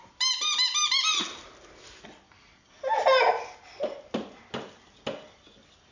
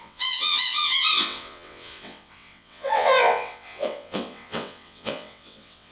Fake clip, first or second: second